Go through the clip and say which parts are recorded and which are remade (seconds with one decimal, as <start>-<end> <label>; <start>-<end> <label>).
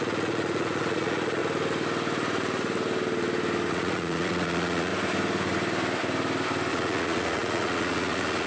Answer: 0.0-1.4 remade; 1.4-3.7 recorded; 3.7-4.9 remade; 4.9-6.7 recorded; 6.7-8.5 remade